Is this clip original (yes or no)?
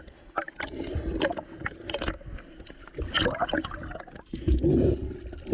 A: yes